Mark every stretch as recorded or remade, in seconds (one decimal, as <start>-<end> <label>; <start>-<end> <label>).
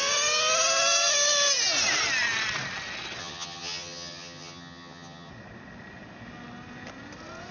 0.0-3.2 recorded; 3.2-5.3 remade; 5.3-7.5 recorded